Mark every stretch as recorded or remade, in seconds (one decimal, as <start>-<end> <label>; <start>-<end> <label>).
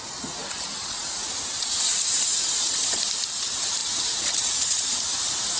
0.0-5.6 remade